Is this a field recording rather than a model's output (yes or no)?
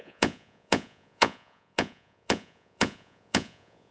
no